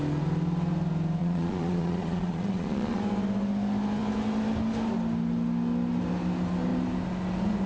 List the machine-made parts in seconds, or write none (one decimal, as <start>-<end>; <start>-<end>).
1.2-3.0